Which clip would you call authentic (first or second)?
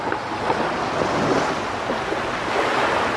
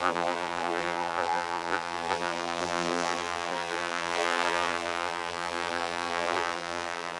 first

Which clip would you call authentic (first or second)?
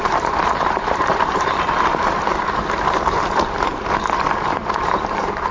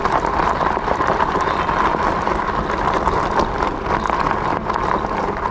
second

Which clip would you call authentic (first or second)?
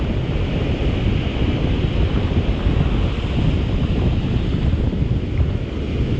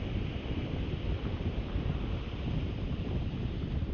first